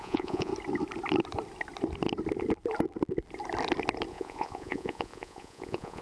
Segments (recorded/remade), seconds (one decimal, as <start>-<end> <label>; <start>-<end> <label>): 0.0-0.5 remade; 0.5-4.1 recorded; 4.1-6.0 remade